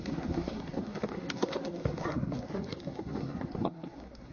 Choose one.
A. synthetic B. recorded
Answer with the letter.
A